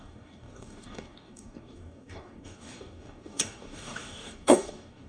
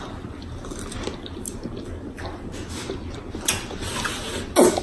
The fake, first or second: first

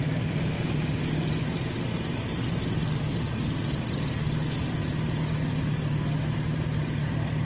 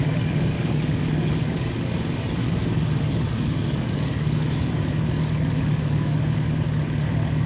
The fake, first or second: second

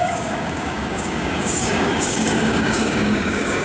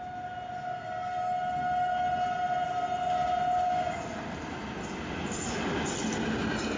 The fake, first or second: first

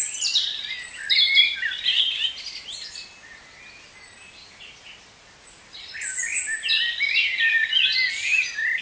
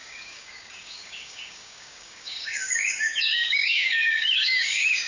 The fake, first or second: second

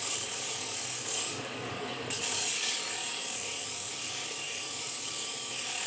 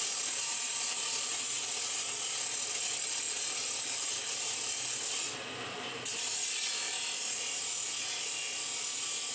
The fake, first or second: first